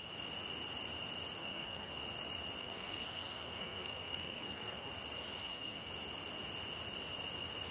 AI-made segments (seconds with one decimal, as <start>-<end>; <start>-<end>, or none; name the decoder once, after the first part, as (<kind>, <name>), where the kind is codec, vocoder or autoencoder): 1.4-1.9 (codec, SNAC); 2.6-4.9; 5.4-5.9